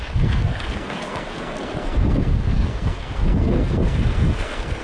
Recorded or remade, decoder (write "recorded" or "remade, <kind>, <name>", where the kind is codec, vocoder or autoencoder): remade, codec, SNAC